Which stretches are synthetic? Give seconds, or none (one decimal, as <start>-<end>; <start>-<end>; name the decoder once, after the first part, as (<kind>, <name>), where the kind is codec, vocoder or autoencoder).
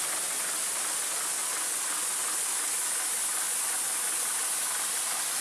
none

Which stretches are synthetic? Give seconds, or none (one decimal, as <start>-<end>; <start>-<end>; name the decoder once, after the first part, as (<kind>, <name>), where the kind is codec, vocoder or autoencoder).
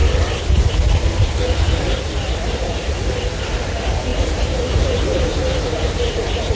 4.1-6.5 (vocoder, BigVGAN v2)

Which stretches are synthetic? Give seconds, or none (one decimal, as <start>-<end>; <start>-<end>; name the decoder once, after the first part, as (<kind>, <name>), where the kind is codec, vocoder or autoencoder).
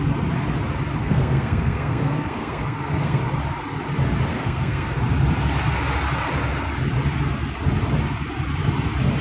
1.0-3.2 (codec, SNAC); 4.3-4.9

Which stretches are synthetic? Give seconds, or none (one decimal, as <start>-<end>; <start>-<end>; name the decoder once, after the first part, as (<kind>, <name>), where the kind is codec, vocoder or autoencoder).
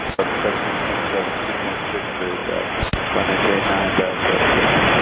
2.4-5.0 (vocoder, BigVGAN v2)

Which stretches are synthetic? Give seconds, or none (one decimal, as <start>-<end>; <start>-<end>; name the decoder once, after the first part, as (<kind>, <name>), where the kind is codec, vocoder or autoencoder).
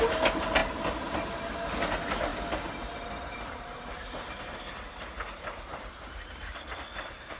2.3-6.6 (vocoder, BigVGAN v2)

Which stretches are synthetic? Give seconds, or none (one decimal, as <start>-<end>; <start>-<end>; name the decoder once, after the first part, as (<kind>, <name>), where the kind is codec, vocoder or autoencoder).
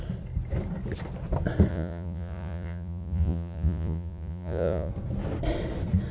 1.7-4.9 (vocoder, Vocos)